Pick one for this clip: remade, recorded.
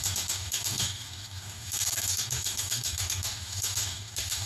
remade